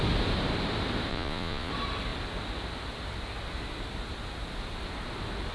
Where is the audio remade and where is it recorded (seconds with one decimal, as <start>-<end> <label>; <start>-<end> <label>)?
0.0-1.1 recorded; 1.1-1.7 remade; 1.7-5.5 recorded

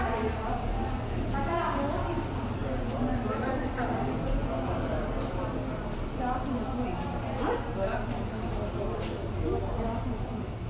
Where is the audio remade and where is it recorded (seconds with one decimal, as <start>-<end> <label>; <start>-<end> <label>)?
0.0-10.7 recorded

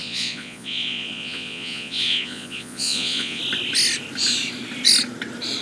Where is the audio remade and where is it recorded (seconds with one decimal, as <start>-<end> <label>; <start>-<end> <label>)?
0.0-3.4 remade; 3.4-5.6 recorded

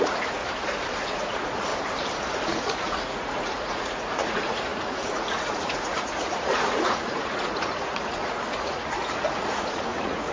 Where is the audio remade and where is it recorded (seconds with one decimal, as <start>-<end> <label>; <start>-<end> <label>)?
0.0-0.4 remade; 0.4-1.0 recorded; 1.0-1.7 remade; 1.7-2.3 recorded; 2.3-10.3 remade

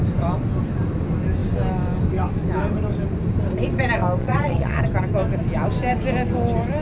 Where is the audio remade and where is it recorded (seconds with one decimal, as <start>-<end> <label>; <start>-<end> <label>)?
0.0-4.2 recorded; 4.2-4.8 remade; 4.8-6.8 recorded

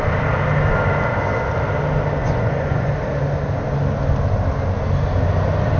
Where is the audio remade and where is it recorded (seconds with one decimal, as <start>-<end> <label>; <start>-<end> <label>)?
0.0-2.2 recorded; 2.2-2.9 remade; 2.9-5.8 recorded

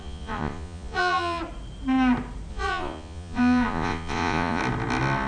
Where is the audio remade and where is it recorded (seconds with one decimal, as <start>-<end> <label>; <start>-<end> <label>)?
0.0-1.4 remade; 1.4-2.5 recorded; 2.5-4.6 remade; 4.6-5.3 recorded

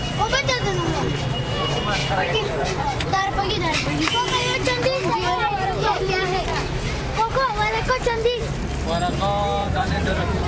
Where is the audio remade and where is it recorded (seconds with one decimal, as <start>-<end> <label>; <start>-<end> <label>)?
0.0-2.0 recorded; 2.0-3.5 remade; 3.5-9.6 recorded; 9.6-10.5 remade